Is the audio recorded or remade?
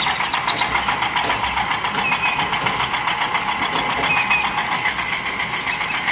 recorded